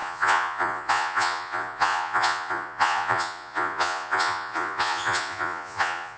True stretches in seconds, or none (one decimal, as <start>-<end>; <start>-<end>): none